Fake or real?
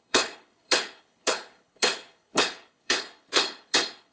fake